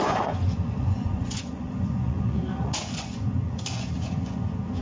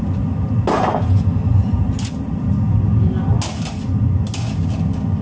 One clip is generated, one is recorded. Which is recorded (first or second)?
second